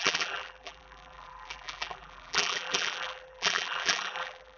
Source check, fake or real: fake